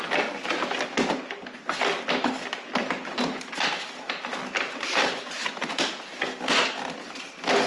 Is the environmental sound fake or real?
real